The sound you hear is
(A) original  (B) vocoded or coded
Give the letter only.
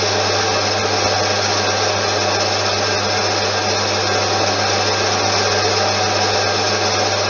A